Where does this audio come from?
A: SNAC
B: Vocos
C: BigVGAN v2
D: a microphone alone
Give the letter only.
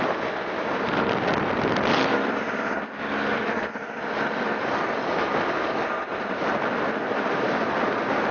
D